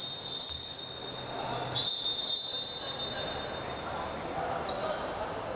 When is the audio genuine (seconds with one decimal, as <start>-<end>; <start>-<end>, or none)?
0.0-4.8